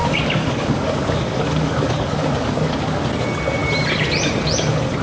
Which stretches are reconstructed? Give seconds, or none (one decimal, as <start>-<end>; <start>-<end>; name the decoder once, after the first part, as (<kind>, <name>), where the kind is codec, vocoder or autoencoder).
0.0-3.0 (codec, DAC)